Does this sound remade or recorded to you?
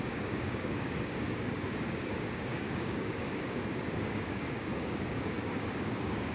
remade